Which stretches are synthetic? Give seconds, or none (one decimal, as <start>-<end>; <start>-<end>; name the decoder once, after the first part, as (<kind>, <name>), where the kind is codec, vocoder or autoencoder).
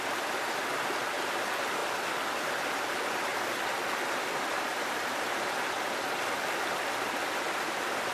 0.0-1.8 (vocoder, BigVGAN v2); 2.6-8.1